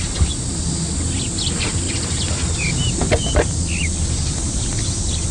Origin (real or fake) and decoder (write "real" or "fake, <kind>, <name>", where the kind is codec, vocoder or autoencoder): real